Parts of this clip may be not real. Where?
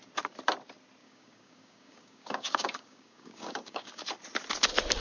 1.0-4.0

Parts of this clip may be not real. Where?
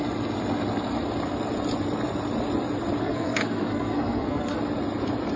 3.0-4.6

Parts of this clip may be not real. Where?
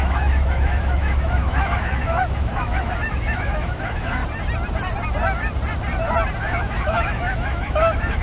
0.0-4.2; 6.4-8.2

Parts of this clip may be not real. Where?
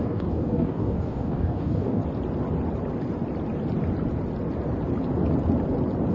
0.0-2.0